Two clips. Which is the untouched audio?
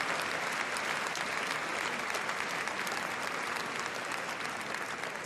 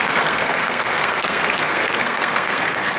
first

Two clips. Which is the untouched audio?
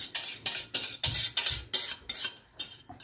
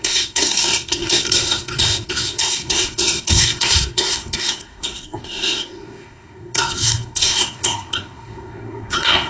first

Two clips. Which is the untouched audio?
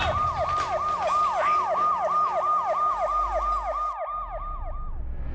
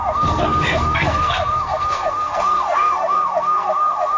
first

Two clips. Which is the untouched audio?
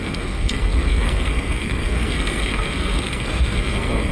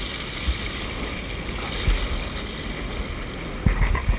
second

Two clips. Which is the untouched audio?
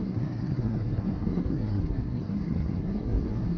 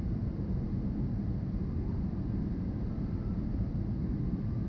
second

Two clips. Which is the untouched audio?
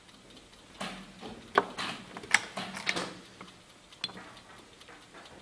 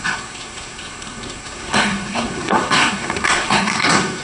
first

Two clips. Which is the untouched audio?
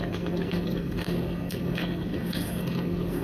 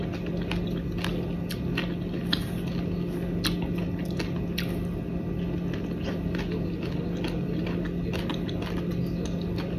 second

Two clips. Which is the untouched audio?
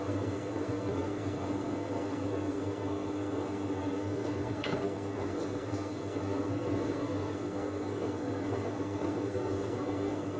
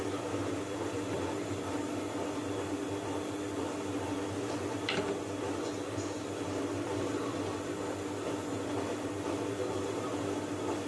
second